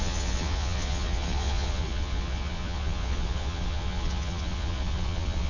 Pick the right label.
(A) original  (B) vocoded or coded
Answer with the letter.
B